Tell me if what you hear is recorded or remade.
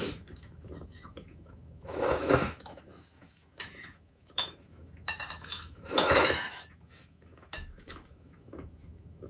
remade